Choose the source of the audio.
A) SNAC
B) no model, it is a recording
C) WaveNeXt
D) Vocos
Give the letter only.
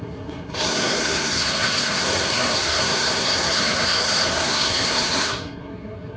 A